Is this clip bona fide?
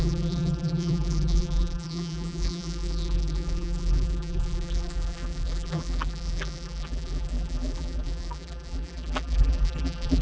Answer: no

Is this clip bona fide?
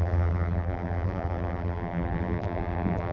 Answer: no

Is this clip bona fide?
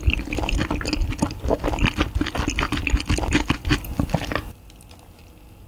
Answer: yes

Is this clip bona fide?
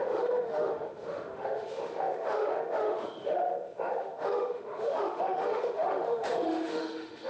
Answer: no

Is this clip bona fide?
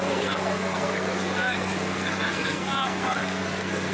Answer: no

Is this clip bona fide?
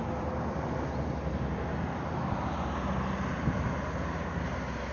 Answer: yes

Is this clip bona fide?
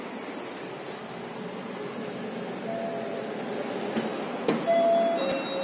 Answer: yes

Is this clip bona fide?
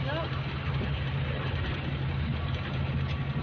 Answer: yes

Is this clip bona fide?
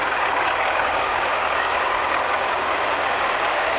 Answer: no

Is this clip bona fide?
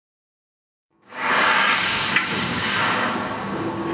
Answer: no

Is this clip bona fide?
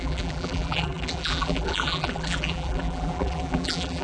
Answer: no